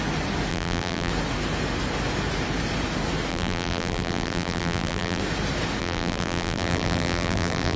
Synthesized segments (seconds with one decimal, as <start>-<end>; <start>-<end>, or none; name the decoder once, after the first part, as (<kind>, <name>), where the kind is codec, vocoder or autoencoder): 0.5-1.1 (vocoder, BigVGAN v2); 3.3-5.2; 5.8-7.8